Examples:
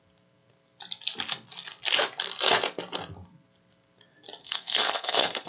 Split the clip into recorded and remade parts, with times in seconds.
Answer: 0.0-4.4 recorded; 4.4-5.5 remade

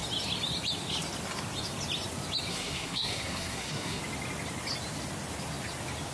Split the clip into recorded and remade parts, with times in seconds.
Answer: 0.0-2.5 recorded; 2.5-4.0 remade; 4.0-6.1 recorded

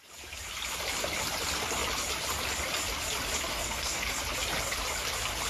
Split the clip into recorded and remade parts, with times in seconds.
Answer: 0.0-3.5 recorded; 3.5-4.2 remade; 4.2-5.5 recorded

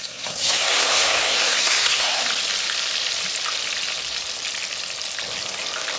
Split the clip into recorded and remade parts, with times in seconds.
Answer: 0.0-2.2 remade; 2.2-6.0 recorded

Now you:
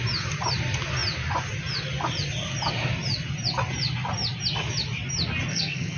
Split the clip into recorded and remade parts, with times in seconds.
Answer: 0.0-5.5 recorded; 5.5-6.0 remade